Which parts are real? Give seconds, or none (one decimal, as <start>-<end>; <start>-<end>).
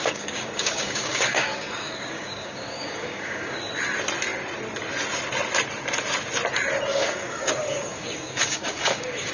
3.7-6.9